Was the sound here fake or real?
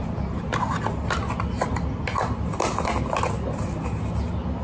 real